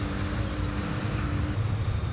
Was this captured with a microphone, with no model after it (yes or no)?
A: yes